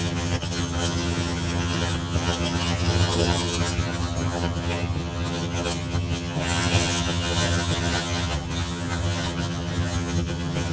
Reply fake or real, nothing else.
fake